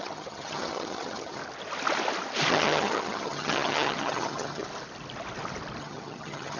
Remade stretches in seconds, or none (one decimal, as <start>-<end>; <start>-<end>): 0.0-1.4; 2.5-4.6; 5.8-6.6